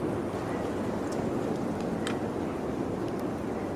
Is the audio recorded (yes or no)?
yes